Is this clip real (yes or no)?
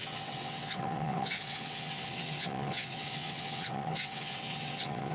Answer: no